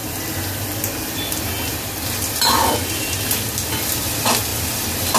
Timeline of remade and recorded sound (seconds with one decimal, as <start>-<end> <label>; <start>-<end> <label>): 0.0-5.2 recorded